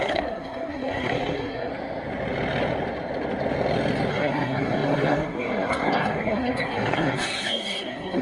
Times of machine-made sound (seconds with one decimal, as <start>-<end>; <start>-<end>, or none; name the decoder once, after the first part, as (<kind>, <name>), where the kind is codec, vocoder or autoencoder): 0.0-1.7 (codec, SNAC); 4.1-8.2